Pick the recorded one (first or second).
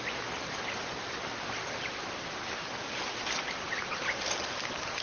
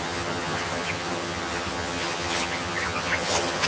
first